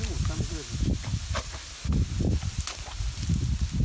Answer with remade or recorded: recorded